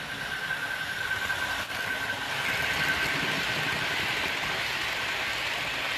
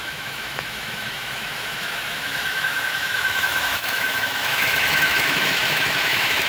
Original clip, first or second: first